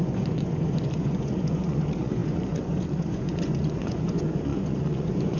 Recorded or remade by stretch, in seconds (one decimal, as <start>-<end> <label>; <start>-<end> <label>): 0.0-5.4 remade